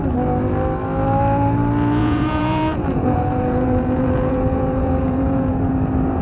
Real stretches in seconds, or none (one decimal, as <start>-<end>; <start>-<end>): 0.0-2.0; 5.7-6.2